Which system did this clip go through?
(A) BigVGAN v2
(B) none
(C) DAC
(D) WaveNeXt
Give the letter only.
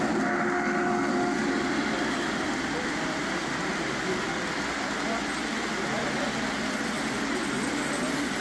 B